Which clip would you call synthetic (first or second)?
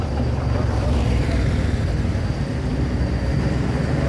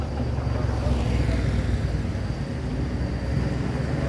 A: first